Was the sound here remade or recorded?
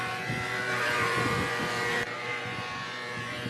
remade